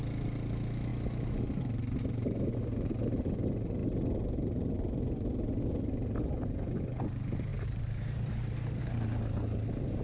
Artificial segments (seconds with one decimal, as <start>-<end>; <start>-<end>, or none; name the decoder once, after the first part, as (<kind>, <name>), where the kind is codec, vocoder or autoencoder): 7.5-8.8 (vocoder, BigVGAN v2)

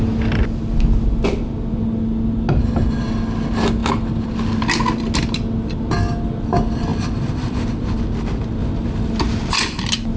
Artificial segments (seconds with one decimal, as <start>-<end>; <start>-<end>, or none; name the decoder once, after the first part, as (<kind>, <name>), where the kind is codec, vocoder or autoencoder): 3.8-4.6 (vocoder, BigVGAN v2); 6.9-8.0; 8.6-9.2